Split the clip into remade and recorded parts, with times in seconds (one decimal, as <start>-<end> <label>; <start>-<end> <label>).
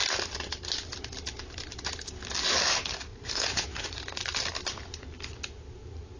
0.0-3.1 recorded; 3.1-4.0 remade; 4.0-6.2 recorded